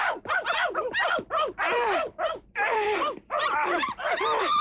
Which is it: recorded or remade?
remade